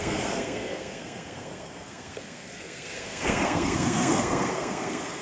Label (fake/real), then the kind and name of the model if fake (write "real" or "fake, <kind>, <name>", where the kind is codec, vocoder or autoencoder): fake, codec, SNAC